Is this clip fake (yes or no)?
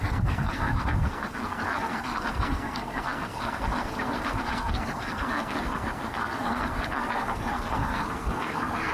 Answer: yes